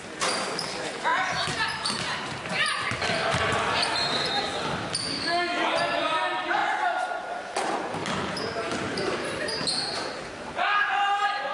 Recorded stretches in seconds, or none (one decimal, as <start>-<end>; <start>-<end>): 0.0-1.1; 2.5-8.0; 10.9-11.5